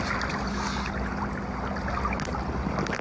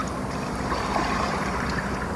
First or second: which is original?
first